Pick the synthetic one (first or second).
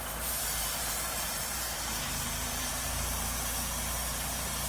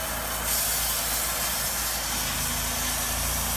first